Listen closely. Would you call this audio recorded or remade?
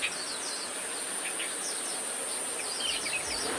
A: recorded